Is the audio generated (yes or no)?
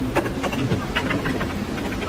yes